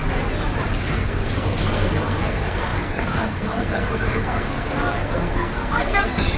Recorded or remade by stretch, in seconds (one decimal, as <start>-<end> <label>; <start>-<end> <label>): 0.0-0.8 recorded; 0.8-6.4 remade

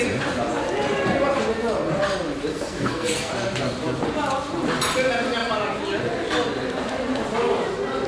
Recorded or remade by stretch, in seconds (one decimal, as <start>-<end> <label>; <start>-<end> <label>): 0.0-2.5 recorded; 2.5-3.3 remade; 3.3-8.1 recorded

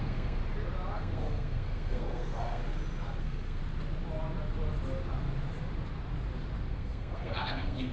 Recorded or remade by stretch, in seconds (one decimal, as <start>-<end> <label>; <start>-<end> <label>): 0.0-0.4 remade; 0.4-1.0 recorded; 1.0-2.6 remade; 2.6-3.2 recorded; 3.2-3.6 remade; 3.6-6.7 recorded; 6.7-7.9 remade

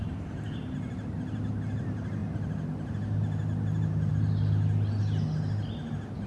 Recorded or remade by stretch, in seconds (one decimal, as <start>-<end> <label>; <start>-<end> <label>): 0.0-6.3 recorded

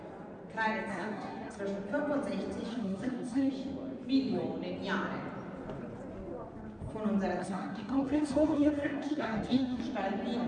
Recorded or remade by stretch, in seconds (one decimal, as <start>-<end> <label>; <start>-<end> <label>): 0.0-0.9 recorded; 0.9-1.6 remade; 1.6-2.7 recorded; 2.7-3.5 remade; 3.5-7.4 recorded; 7.4-9.8 remade; 9.8-10.5 recorded

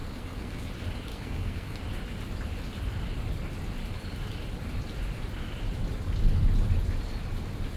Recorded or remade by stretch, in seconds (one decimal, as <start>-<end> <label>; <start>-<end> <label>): 0.0-0.7 remade; 0.7-1.1 recorded; 1.1-1.8 remade; 1.8-7.8 recorded

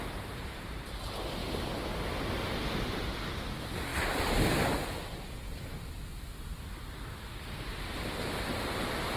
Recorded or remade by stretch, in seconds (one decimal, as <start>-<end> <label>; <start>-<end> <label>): 0.0-9.2 recorded

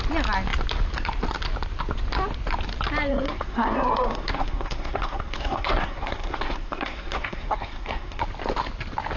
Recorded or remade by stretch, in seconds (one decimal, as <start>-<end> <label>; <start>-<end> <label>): 0.0-3.1 recorded; 3.1-8.2 remade; 8.2-9.2 recorded